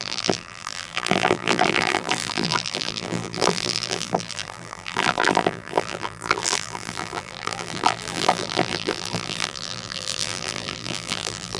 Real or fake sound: fake